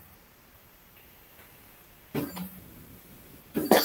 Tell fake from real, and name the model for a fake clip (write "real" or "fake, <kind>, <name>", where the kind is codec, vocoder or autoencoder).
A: fake, vocoder, BigVGAN v2